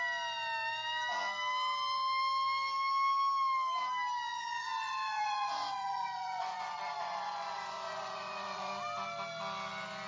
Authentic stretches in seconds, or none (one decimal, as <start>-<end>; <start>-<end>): 0.0-4.3; 8.7-10.1

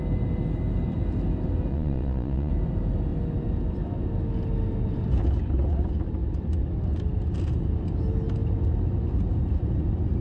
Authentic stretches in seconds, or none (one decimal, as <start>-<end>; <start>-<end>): 0.0-1.7; 2.5-10.2

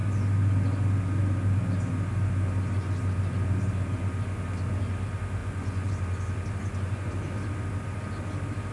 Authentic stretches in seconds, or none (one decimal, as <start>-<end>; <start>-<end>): 0.0-5.4; 5.9-6.6; 7.1-8.7

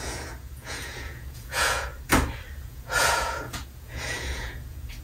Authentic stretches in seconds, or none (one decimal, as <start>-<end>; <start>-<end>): 1.9-2.6

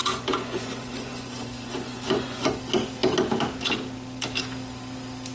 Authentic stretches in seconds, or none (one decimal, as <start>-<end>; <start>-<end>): 2.6-5.3

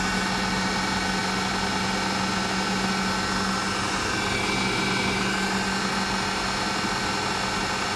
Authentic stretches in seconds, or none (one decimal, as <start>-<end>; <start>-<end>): 0.0-8.0